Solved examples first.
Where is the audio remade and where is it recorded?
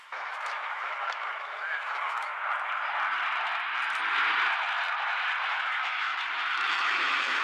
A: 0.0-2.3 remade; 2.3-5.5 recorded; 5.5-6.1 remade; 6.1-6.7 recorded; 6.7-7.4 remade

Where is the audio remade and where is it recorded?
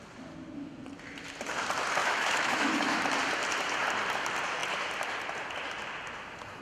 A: 0.0-2.0 recorded; 2.0-3.0 remade; 3.0-6.6 recorded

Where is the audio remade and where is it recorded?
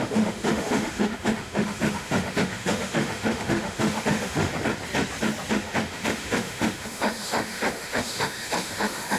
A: 0.0-4.5 remade; 4.5-5.5 recorded; 5.5-9.2 remade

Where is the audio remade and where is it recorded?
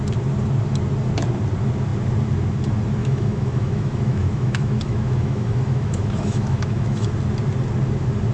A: 0.0-3.0 recorded; 3.0-7.1 remade; 7.1-8.3 recorded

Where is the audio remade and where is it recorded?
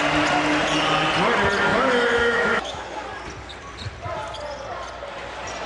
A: 0.0-1.7 recorded; 1.7-2.8 remade; 2.8-5.7 recorded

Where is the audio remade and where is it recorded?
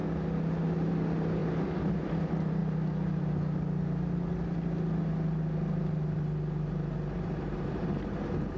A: 0.0-8.6 recorded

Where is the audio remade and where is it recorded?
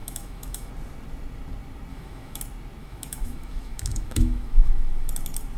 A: 0.0-0.7 remade; 0.7-1.9 recorded; 1.9-2.4 remade; 2.4-2.8 recorded; 2.8-5.1 remade; 5.1-5.6 recorded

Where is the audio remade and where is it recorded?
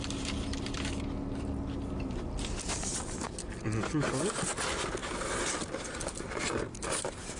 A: 0.0-7.4 recorded